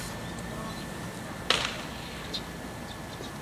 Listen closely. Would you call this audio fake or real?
real